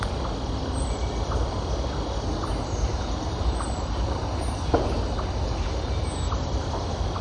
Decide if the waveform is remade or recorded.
recorded